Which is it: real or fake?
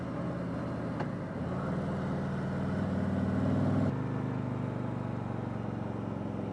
real